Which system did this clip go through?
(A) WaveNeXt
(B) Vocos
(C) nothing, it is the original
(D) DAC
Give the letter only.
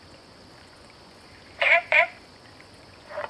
B